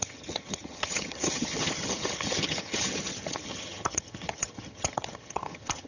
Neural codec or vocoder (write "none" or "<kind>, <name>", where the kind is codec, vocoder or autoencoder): vocoder, HiFi-GAN